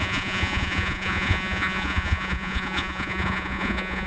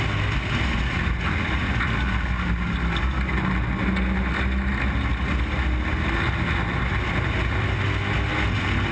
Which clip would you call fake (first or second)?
first